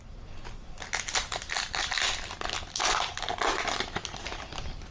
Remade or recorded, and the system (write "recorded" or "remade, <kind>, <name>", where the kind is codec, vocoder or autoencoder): recorded